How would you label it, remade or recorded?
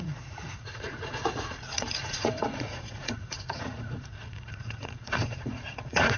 remade